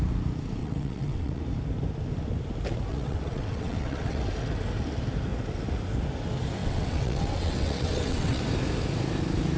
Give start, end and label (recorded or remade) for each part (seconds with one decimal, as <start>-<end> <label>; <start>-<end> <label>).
0.0-0.6 recorded; 0.6-1.4 remade; 1.4-2.9 recorded; 2.9-4.2 remade; 4.2-6.6 recorded; 6.6-8.4 remade; 8.4-9.6 recorded